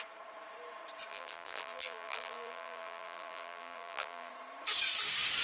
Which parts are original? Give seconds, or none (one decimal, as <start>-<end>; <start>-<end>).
0.0-1.1; 4.3-5.4